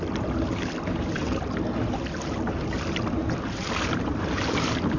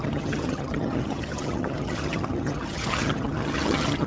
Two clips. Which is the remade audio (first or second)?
second